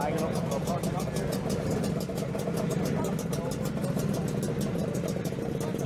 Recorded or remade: recorded